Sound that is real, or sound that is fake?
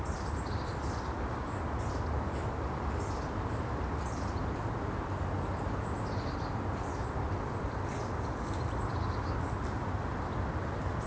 real